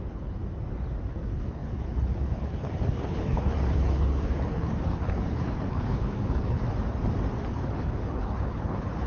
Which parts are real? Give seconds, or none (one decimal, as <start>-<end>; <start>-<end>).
0.4-1.1; 6.6-7.5